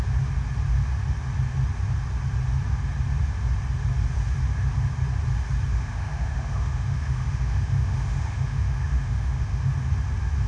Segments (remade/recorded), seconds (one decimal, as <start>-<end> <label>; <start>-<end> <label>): 0.0-5.7 recorded; 5.7-9.7 remade; 9.7-10.5 recorded